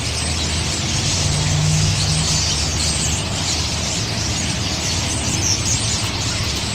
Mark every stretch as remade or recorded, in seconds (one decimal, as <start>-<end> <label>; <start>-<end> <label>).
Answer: 0.0-1.6 recorded; 1.6-2.1 remade; 2.1-6.7 recorded